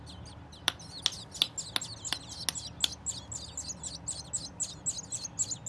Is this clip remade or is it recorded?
recorded